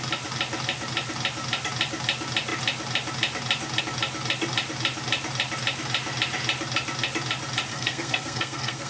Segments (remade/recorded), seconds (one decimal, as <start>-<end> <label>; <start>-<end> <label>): 0.0-7.7 recorded; 7.7-8.9 remade